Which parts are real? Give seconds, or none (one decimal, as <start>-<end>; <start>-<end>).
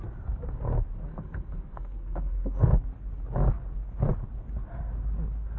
0.0-1.1; 2.7-5.6